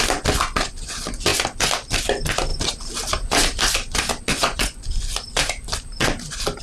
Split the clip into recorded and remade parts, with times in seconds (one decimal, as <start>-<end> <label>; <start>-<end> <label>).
0.0-4.3 recorded; 4.3-4.8 remade; 4.8-6.6 recorded